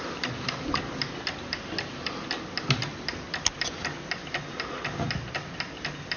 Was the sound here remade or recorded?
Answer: recorded